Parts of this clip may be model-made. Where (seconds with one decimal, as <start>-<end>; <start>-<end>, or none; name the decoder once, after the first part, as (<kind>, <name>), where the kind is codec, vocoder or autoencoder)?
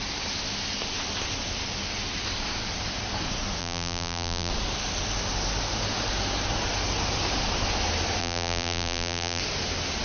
3.6-4.5 (vocoder, BigVGAN v2); 8.2-9.4